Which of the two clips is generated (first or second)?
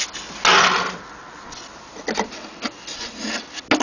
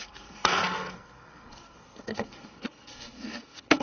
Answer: second